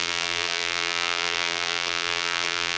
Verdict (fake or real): fake